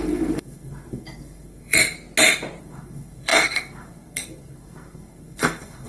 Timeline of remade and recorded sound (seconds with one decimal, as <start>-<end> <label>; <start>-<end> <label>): 0.0-1.8 remade; 1.8-2.6 recorded; 2.6-5.9 remade